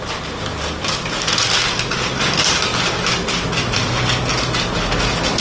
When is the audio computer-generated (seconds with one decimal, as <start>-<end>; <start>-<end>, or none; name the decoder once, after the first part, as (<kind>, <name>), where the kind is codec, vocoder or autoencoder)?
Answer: none